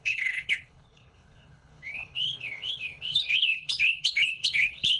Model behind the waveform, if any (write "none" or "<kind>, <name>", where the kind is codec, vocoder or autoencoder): codec, HILCodec